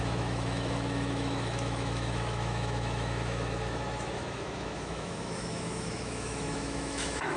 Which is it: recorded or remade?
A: remade